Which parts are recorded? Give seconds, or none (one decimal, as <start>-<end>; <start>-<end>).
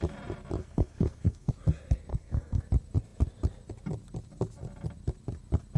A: 0.0-0.6; 1.5-2.1; 2.6-5.8